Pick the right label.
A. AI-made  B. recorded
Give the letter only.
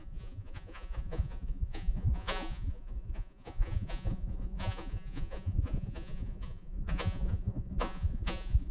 A